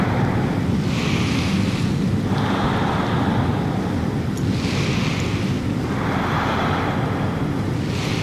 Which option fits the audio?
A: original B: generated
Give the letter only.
A